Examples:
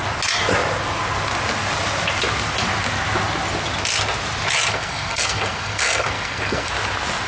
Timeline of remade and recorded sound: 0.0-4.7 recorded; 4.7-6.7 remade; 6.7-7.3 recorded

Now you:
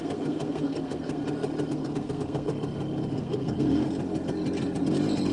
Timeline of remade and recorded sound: 0.0-1.2 remade; 1.2-1.7 recorded; 1.7-2.5 remade; 2.5-3.1 recorded; 3.1-3.8 remade; 3.8-5.3 recorded

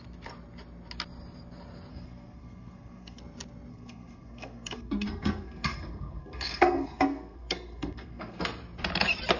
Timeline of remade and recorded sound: 0.0-1.9 recorded; 1.9-3.2 remade; 3.2-3.7 recorded; 3.7-8.4 remade; 8.4-9.4 recorded

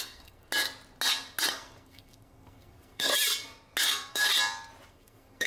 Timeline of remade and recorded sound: 0.0-0.5 remade; 0.5-1.5 recorded; 1.5-3.1 remade; 3.1-3.8 recorded; 3.8-4.3 remade; 4.3-4.9 recorded; 4.9-5.5 remade